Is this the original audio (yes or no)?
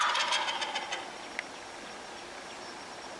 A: yes